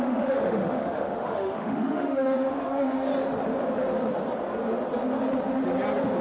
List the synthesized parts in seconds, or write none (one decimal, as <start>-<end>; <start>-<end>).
0.0-3.1